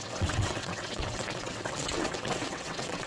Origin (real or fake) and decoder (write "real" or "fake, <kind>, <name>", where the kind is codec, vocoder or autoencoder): fake, vocoder, WaveNeXt